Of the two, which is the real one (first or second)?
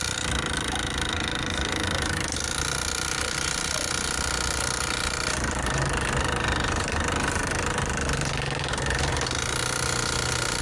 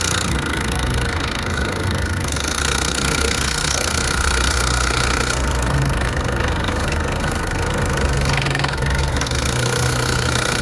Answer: first